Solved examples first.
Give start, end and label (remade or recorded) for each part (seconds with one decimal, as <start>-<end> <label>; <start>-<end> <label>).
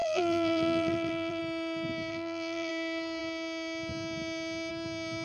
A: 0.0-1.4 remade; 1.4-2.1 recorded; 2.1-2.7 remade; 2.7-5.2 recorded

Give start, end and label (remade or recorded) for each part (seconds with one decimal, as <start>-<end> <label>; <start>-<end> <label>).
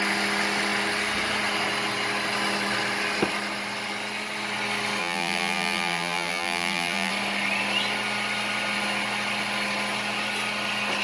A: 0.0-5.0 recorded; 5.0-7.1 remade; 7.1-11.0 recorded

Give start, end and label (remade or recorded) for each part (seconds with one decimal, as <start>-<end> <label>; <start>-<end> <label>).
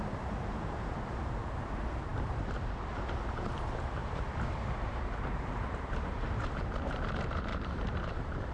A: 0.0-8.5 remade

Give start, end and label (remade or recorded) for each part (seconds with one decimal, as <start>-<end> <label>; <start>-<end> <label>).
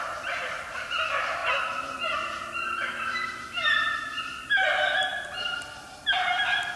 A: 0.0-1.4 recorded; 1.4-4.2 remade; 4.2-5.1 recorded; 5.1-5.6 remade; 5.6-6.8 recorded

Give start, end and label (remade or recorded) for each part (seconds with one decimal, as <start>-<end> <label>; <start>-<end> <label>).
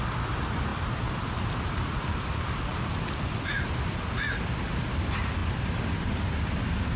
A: 0.0-7.0 remade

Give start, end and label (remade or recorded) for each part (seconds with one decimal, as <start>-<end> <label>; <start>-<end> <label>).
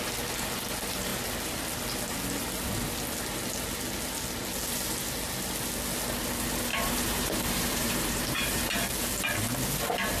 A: 0.0-6.7 recorded; 6.7-8.7 remade; 8.7-10.2 recorded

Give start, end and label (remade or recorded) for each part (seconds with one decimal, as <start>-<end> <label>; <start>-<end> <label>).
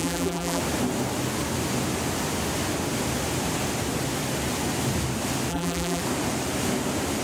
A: 0.0-0.6 remade; 0.6-5.5 recorded; 5.5-6.0 remade; 6.0-7.2 recorded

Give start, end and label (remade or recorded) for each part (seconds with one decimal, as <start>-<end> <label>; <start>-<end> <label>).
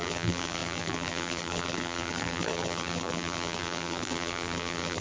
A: 0.0-5.0 remade